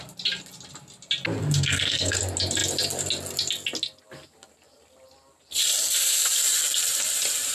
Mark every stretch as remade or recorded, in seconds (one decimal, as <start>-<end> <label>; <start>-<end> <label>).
0.0-1.4 recorded; 1.4-2.2 remade; 2.2-7.5 recorded